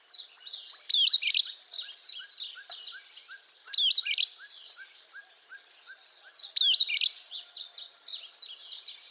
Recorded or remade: recorded